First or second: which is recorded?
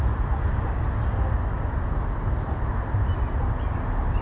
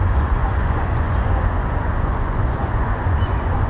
first